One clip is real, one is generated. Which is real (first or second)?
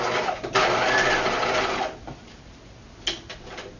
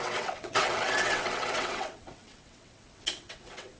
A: first